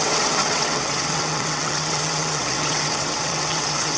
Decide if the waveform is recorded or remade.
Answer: remade